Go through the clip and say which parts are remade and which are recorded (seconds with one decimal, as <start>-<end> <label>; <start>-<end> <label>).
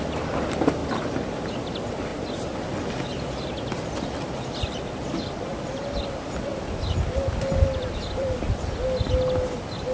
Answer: 0.0-0.8 recorded; 0.8-1.6 remade; 1.6-5.5 recorded; 5.5-6.0 remade; 6.0-6.5 recorded; 6.5-8.6 remade; 8.6-9.9 recorded